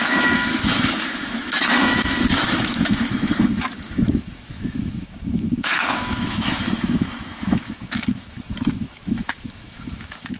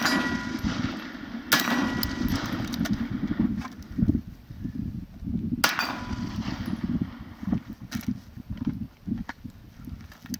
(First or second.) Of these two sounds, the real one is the second